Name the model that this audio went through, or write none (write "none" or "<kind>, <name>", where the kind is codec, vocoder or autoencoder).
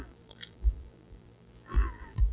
vocoder, BigVGAN v2